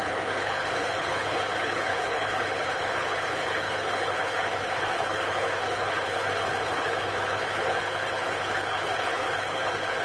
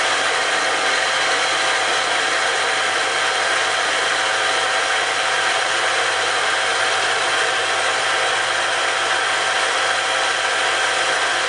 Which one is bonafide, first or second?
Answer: second